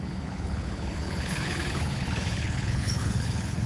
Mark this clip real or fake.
fake